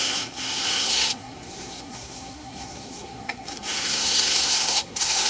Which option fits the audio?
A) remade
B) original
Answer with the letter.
A